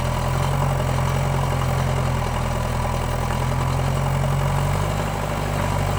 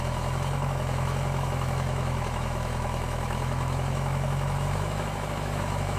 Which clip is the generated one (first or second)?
second